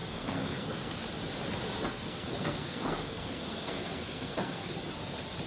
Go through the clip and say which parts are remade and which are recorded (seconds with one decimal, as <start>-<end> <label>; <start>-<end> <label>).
0.0-1.0 remade; 1.0-1.9 recorded; 1.9-4.7 remade; 4.7-5.5 recorded